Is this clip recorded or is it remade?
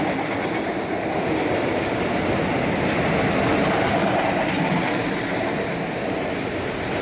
recorded